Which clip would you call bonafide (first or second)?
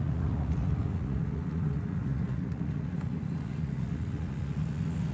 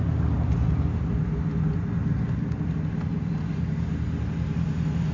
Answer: second